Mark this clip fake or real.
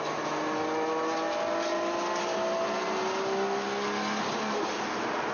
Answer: real